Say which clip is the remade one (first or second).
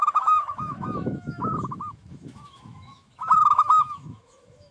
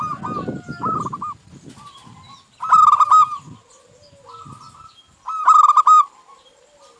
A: first